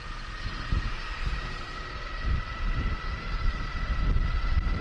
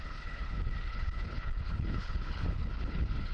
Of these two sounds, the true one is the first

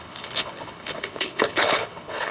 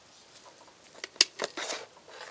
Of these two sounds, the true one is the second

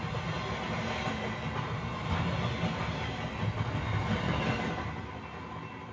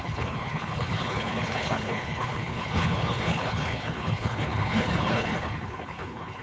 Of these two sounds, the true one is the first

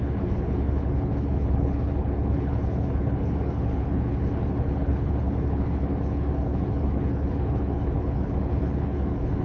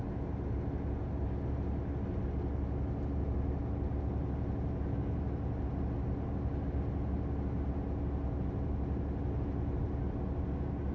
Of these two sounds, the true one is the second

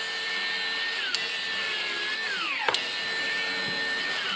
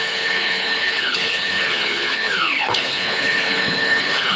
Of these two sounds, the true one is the first